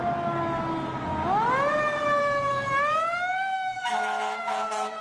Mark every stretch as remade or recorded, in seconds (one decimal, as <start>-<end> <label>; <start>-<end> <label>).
0.0-2.2 recorded; 2.2-5.0 remade